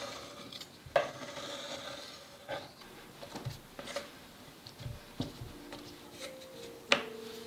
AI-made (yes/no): no